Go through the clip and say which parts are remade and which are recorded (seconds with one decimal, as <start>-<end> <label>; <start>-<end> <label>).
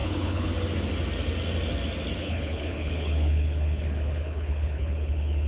0.0-0.5 remade; 0.5-2.2 recorded; 2.2-5.5 remade